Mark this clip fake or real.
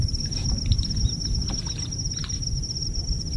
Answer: real